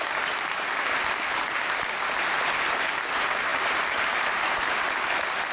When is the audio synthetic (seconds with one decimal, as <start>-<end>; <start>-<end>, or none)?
3.5-4.6